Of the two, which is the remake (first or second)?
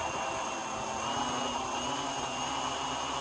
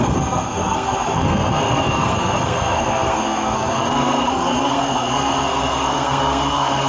second